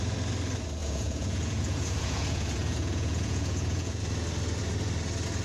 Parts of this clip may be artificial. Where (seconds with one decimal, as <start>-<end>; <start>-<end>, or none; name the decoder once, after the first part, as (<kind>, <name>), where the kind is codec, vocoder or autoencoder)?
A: 0.8-4.0 (vocoder, Vocos)